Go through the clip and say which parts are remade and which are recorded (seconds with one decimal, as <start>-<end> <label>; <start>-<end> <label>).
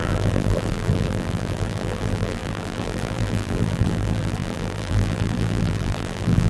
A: 0.0-6.5 remade